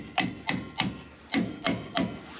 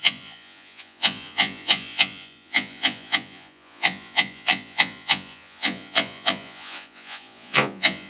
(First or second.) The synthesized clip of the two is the second